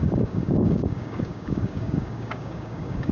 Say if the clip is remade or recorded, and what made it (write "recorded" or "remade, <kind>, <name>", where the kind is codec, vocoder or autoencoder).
remade, codec, DAC